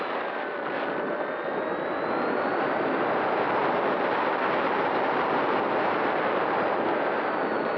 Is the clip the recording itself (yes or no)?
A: yes